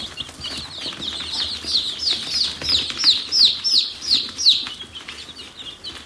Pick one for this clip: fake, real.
real